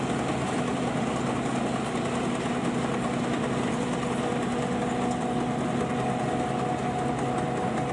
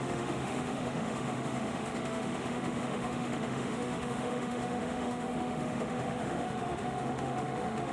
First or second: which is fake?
second